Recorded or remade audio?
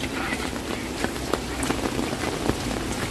recorded